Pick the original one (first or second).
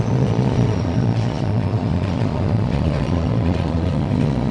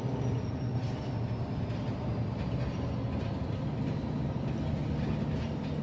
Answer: second